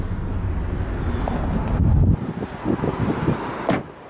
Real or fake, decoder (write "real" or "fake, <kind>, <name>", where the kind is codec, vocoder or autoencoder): real